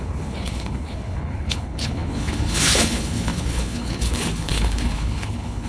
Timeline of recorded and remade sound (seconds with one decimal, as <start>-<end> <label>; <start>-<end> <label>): 0.0-5.7 remade